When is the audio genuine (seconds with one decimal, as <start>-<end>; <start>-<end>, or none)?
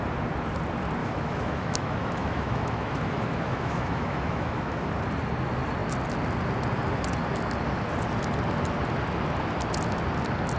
0.0-1.0; 4.9-10.6